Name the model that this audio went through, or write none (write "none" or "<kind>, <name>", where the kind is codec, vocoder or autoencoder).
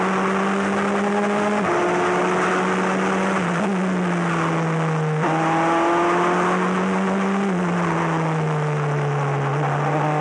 none